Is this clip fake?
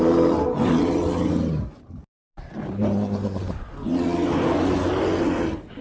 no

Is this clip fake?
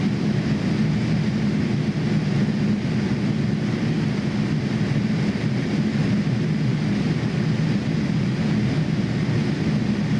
no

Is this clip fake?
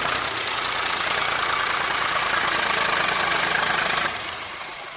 yes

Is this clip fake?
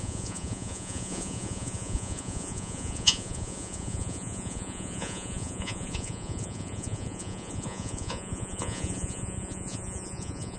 yes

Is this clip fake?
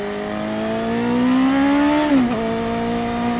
no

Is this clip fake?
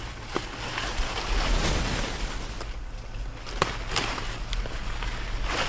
no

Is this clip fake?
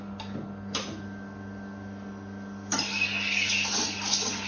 no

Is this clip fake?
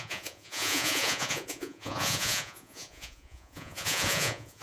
yes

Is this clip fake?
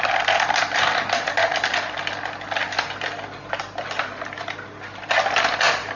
no